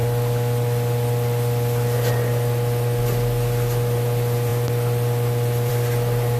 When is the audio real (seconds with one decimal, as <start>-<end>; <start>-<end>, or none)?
0.0-6.4